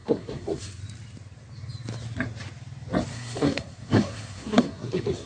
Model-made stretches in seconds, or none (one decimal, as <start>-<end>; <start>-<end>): 0.0-0.8; 3.1-5.3